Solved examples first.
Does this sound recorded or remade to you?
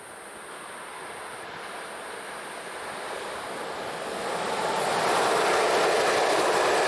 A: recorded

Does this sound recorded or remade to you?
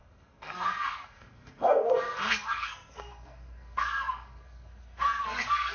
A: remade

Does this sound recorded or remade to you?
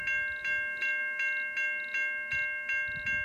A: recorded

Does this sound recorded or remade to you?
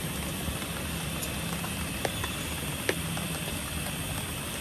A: recorded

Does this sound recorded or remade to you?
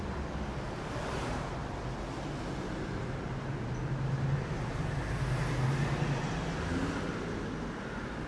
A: recorded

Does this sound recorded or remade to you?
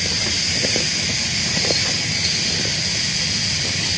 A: recorded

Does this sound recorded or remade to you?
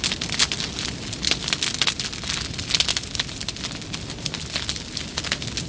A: recorded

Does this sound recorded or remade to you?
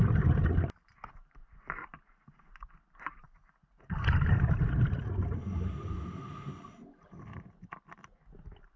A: recorded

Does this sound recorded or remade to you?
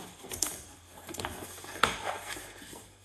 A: remade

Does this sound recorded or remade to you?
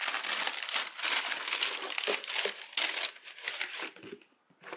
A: recorded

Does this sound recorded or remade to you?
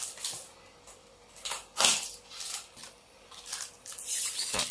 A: recorded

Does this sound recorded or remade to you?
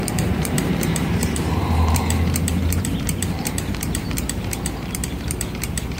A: remade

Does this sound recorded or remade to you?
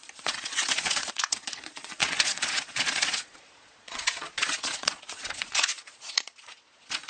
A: remade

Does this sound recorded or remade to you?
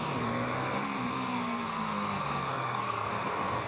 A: remade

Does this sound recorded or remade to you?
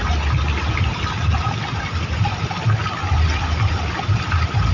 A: recorded